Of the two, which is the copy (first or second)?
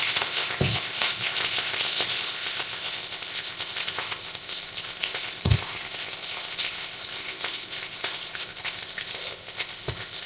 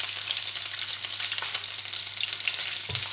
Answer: first